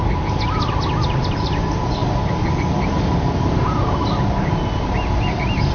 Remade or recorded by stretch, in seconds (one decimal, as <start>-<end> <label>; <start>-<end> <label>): 0.0-5.7 recorded